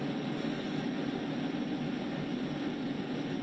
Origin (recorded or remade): recorded